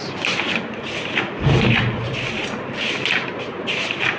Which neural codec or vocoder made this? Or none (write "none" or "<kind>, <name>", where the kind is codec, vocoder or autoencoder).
none